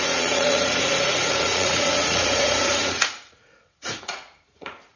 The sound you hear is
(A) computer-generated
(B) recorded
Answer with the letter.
A